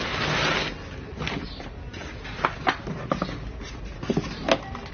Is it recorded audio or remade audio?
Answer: recorded